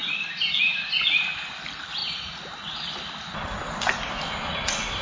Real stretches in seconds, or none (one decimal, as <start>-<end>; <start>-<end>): 0.0-5.0